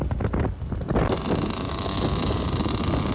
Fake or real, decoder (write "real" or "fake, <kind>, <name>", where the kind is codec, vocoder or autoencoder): real